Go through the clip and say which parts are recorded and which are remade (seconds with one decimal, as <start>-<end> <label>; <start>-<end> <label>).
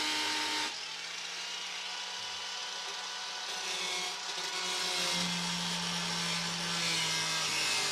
0.0-7.9 recorded